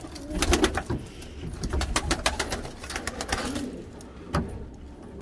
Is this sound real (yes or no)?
yes